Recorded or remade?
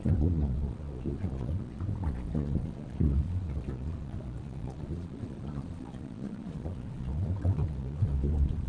remade